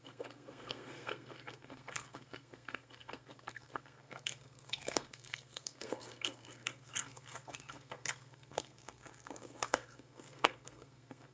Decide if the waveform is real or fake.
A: fake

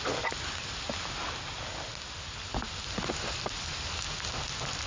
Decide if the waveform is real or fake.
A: real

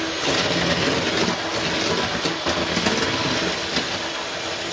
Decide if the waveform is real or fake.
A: real